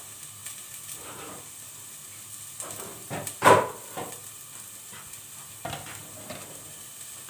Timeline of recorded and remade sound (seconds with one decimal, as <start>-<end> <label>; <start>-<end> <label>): 0.0-0.4 recorded; 0.4-2.5 remade; 2.5-2.9 recorded; 2.9-7.3 remade